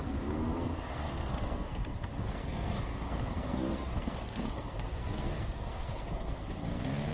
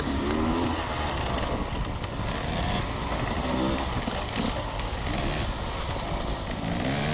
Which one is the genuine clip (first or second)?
second